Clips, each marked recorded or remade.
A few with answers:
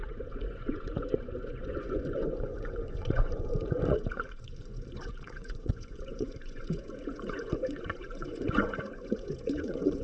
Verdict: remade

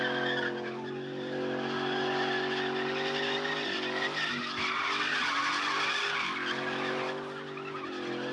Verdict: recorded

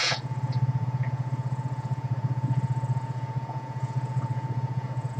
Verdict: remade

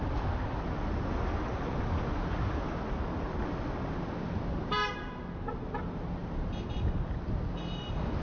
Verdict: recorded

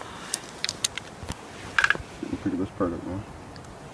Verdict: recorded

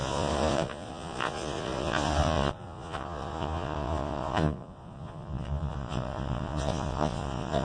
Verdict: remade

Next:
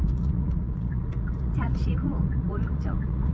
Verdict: remade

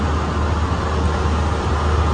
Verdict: recorded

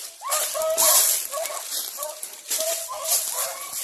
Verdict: recorded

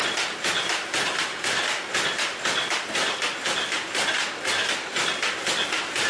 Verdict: recorded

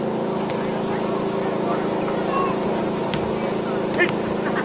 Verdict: recorded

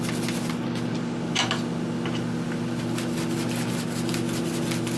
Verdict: recorded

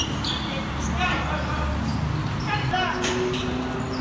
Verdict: recorded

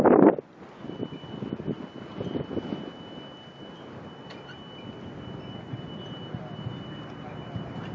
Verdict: recorded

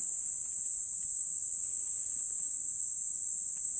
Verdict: recorded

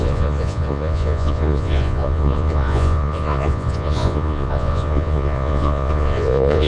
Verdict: remade